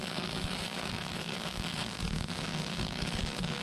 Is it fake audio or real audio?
fake